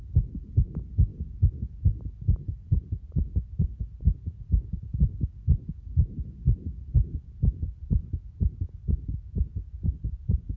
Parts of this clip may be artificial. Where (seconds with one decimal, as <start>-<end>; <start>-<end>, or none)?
none